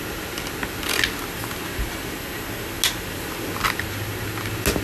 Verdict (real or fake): real